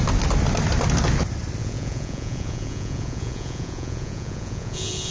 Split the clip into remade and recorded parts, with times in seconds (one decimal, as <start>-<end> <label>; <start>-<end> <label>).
0.0-1.6 recorded; 1.6-5.1 remade